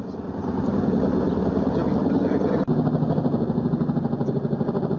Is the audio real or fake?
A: real